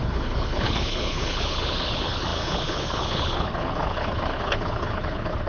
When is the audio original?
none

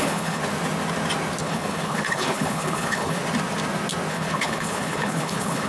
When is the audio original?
0.4-1.4; 3.2-4.1